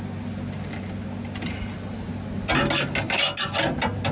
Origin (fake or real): real